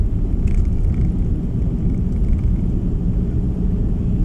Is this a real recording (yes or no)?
yes